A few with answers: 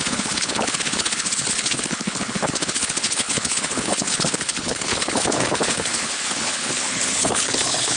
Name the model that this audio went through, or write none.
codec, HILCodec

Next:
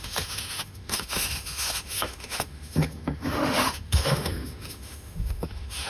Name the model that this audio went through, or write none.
autoencoder, DAC-VAE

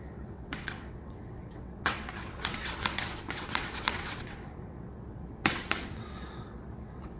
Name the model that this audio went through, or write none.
vocoder, WaveNeXt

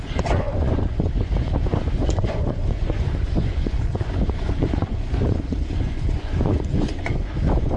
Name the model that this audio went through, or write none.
vocoder, Vocos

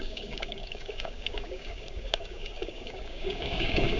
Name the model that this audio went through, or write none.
codec, DAC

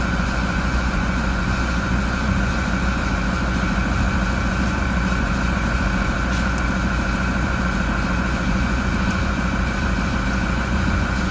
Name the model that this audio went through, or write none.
vocoder, Vocos